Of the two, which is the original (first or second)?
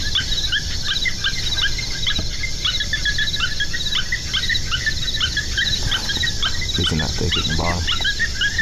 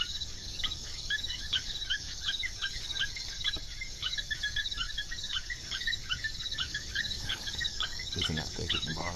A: first